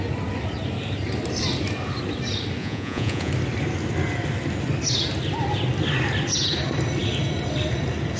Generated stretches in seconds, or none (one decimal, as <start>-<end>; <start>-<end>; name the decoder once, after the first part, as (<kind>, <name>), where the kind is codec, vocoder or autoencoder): 2.6-3.3 (vocoder, Vocos)